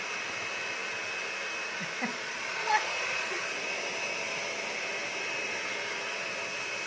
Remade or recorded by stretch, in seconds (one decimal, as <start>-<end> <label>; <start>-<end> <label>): 0.0-2.1 recorded; 2.1-3.4 remade; 3.4-6.9 recorded